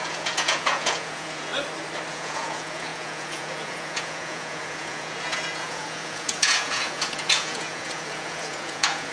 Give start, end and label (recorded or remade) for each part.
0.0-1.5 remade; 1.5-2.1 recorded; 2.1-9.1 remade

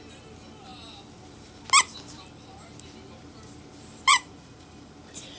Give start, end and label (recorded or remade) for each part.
0.0-4.1 recorded; 4.1-4.9 remade; 4.9-5.4 recorded

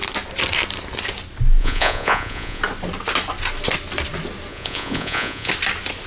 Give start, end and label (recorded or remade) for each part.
0.0-1.6 recorded; 1.6-2.6 remade; 2.6-4.5 recorded; 4.5-5.5 remade; 5.5-6.1 recorded

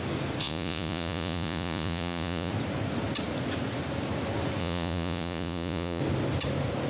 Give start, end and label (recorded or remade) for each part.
0.0-0.4 recorded; 0.4-2.5 remade; 2.5-4.6 recorded; 4.6-6.0 remade; 6.0-6.9 recorded

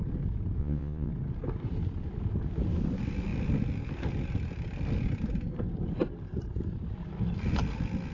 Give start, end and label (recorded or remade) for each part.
0.0-0.6 recorded; 0.6-1.1 remade; 1.1-8.1 recorded

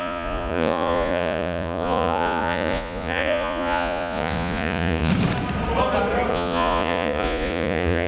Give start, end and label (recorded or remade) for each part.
0.0-5.1 remade; 5.1-6.3 recorded; 6.3-8.1 remade